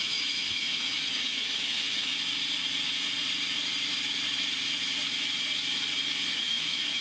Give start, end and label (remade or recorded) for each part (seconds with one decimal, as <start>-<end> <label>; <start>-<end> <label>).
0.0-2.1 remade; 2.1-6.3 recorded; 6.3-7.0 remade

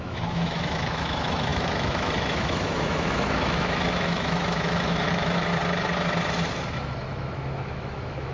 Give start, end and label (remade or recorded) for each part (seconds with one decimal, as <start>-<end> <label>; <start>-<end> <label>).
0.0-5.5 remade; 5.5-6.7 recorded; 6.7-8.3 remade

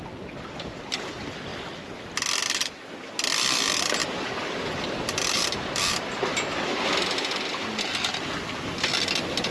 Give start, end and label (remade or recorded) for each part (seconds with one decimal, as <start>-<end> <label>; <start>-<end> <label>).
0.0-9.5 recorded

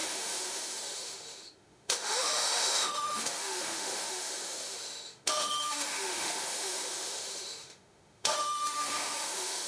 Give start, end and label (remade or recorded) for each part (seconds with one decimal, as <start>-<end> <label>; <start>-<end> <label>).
0.0-9.7 remade

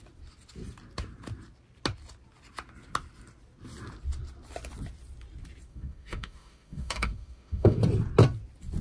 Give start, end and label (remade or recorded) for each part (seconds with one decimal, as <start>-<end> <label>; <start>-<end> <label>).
0.0-5.7 recorded; 5.7-7.8 remade; 7.8-8.8 recorded